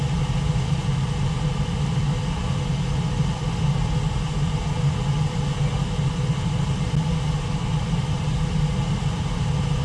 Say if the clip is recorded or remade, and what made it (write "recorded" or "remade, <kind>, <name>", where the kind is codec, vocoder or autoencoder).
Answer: recorded